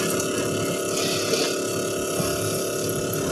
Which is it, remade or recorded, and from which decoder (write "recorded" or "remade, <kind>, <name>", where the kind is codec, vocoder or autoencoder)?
recorded